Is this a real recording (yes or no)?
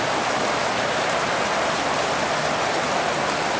yes